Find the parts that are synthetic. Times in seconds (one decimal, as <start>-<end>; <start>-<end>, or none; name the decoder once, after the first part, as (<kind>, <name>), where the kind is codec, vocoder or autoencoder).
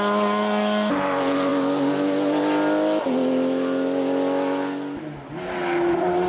none